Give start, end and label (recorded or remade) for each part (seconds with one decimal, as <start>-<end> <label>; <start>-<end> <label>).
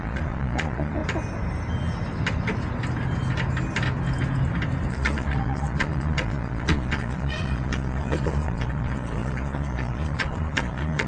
0.0-1.0 remade; 1.0-4.9 recorded; 4.9-11.1 remade